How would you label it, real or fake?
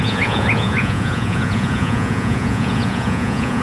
fake